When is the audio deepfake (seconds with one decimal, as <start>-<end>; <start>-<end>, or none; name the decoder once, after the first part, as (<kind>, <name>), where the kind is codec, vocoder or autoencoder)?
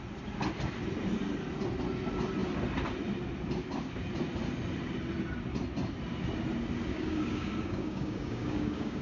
6.9-9.0 (codec, DAC)